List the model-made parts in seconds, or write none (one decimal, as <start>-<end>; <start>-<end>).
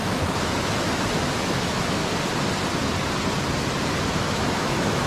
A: 0.0-2.0; 4.2-5.1